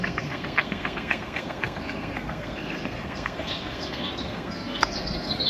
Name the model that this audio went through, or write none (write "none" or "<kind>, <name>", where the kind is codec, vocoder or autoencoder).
codec, SNAC